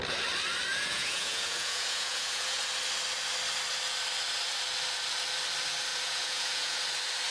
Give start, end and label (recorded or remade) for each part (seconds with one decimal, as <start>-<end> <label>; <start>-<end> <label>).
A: 0.0-0.7 recorded; 0.7-2.6 remade; 2.6-5.9 recorded; 5.9-6.8 remade; 6.8-7.3 recorded